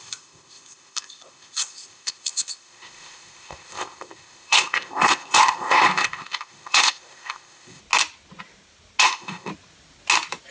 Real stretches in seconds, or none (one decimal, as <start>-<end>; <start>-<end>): 7.8-9.0; 9.5-10.5